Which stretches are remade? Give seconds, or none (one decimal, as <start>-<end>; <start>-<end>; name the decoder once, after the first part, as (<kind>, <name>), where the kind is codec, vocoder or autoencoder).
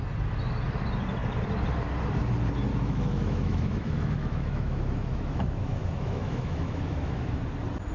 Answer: 2.7-7.4 (autoencoder, DAC-VAE)